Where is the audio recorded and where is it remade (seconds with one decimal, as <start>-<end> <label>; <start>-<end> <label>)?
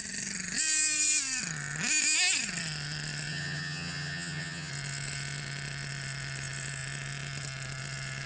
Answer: 0.0-3.3 recorded; 3.3-4.7 remade; 4.7-8.3 recorded